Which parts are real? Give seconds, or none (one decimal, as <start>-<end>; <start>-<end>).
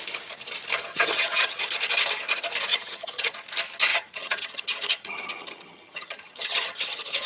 0.0-0.9; 1.6-2.7; 3.3-3.9